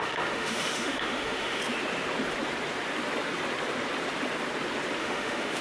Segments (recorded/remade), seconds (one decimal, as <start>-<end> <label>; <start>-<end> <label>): 0.0-1.6 remade; 1.6-5.0 recorded; 5.0-5.6 remade